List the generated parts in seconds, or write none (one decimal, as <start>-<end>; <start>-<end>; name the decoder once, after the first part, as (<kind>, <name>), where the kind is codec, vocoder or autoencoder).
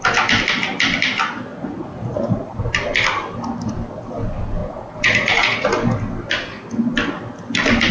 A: 1.5-2.7 (vocoder, Vocos); 4.6-5.7